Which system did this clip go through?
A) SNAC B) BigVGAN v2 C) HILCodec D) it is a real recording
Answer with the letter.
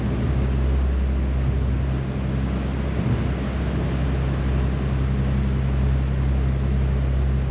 D